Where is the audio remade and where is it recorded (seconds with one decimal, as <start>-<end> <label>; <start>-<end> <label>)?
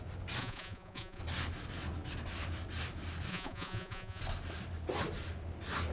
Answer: 0.0-0.4 recorded; 0.4-1.2 remade; 1.2-3.3 recorded; 3.3-4.2 remade; 4.2-5.9 recorded